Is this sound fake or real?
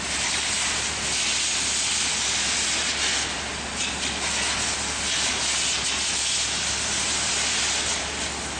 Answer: real